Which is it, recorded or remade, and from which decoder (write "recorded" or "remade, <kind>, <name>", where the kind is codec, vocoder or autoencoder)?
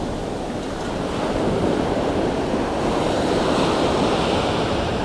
recorded